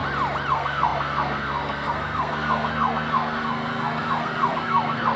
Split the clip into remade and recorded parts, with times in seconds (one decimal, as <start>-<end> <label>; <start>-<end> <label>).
0.0-0.5 recorded; 0.5-5.2 remade